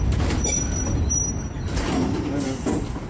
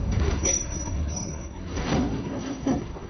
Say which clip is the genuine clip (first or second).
first